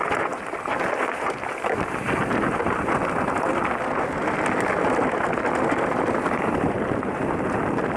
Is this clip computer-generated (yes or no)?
no